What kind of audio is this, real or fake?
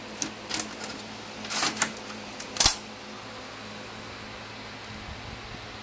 real